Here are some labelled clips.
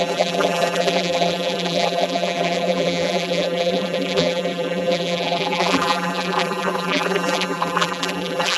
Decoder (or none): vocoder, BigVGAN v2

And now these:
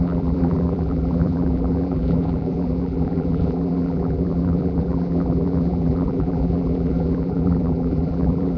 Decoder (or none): vocoder, BigVGAN v2